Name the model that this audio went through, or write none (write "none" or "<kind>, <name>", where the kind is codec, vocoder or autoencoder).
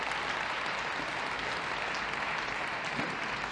none